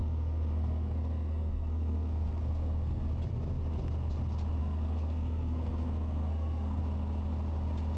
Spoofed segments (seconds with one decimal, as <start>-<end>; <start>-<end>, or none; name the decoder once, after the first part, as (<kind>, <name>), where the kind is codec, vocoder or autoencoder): 0.0-3.1 (codec, SNAC); 4.6-6.8